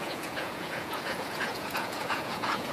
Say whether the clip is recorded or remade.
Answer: remade